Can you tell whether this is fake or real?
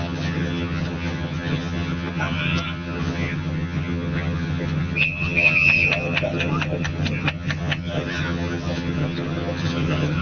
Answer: fake